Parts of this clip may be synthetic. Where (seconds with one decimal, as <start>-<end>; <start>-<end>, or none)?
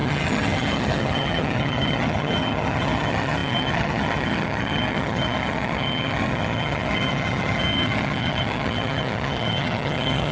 0.0-10.3